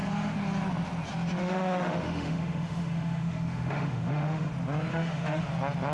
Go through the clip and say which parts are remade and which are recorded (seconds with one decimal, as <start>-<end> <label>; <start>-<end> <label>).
0.0-1.4 recorded; 1.4-4.5 remade; 4.5-4.9 recorded; 4.9-5.4 remade; 5.4-5.9 recorded